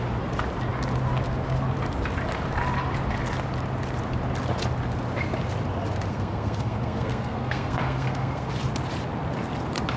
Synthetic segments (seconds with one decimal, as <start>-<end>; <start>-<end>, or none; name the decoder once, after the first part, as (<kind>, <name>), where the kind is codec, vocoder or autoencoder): 6.1-8.5 (codec, SNAC)